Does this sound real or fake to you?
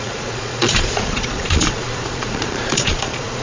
fake